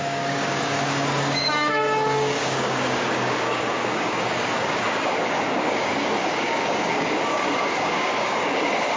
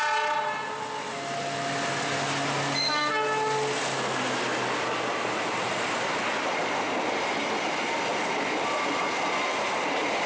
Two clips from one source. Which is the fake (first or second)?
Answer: first